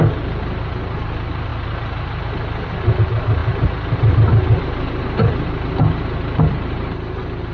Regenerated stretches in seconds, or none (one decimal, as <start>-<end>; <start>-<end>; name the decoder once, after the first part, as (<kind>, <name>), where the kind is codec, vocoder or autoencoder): none